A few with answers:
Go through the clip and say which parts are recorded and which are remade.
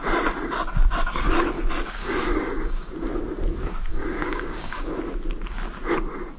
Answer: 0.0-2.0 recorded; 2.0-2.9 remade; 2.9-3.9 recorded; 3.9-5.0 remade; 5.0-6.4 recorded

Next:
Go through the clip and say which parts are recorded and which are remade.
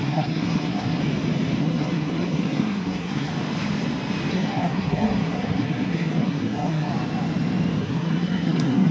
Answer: 0.0-1.0 remade; 1.0-1.6 recorded; 1.6-3.3 remade; 3.3-4.3 recorded; 4.3-6.9 remade; 6.9-7.8 recorded; 7.8-8.9 remade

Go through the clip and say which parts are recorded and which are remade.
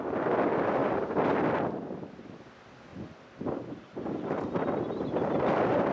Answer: 0.0-5.9 recorded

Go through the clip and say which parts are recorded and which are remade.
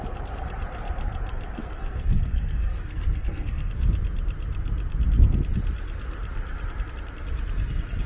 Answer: 0.0-1.6 recorded; 1.6-3.7 remade; 3.7-8.1 recorded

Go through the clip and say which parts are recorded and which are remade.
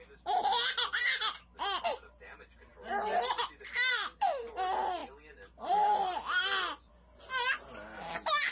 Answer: 0.0-2.7 recorded; 2.7-3.4 remade; 3.4-5.0 recorded; 5.0-6.9 remade; 6.9-8.5 recorded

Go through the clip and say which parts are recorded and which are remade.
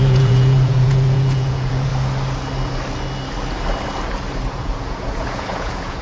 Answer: 0.0-1.9 remade; 1.9-4.4 recorded; 4.4-6.0 remade